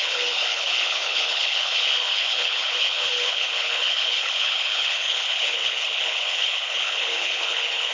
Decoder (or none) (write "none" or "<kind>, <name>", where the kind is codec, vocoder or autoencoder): codec, HILCodec